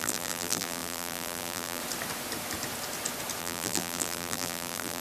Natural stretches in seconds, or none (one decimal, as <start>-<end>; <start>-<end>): 1.8-3.4